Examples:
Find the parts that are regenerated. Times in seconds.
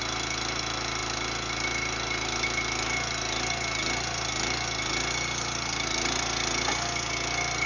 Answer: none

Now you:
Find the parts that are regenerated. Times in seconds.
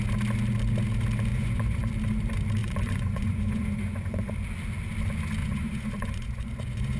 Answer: 1.3-1.9 (vocoder, Vocos); 2.6-4.3; 5.4-7.0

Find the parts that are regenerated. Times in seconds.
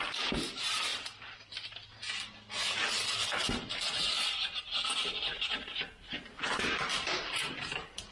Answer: none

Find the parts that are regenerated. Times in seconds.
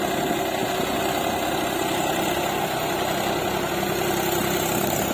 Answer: none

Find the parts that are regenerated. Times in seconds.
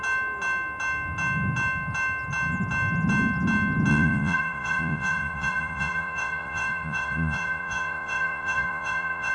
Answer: 3.9-9.3 (vocoder, Vocos)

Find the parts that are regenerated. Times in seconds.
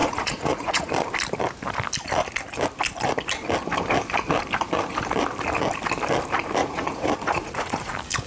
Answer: 0.0-0.9 (vocoder, Vocos); 6.6-7.9